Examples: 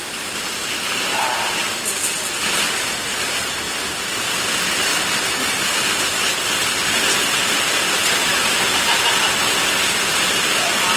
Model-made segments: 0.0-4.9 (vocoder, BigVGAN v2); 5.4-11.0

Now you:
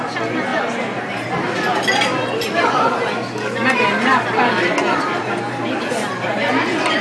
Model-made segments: 0.5-1.3 (vocoder, BigVGAN v2); 4.9-5.9